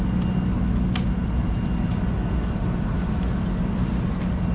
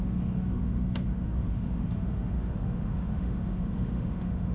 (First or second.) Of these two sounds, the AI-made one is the second